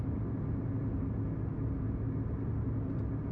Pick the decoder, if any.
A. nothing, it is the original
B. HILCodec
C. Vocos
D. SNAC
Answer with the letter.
A